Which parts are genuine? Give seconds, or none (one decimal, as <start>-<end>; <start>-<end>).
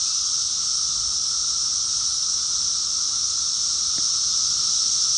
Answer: 0.0-5.2